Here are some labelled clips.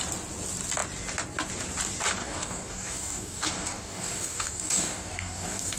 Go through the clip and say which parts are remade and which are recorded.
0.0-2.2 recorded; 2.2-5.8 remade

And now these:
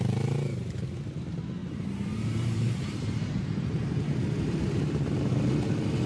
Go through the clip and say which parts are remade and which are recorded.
0.0-1.6 recorded; 1.6-5.3 remade; 5.3-6.1 recorded

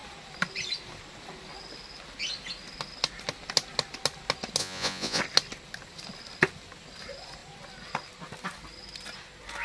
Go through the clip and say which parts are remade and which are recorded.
0.0-4.6 recorded; 4.6-5.2 remade; 5.2-9.6 recorded

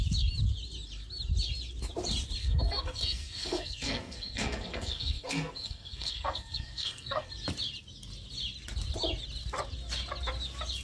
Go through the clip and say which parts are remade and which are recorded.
0.0-2.4 recorded; 2.4-7.3 remade; 7.3-10.8 recorded

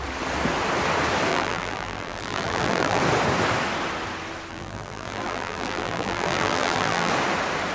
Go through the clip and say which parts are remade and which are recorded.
0.0-1.3 recorded; 1.3-3.0 remade; 3.0-4.5 recorded; 4.5-7.1 remade; 7.1-7.7 recorded